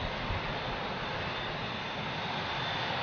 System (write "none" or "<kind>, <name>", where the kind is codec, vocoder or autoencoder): vocoder, BigVGAN v2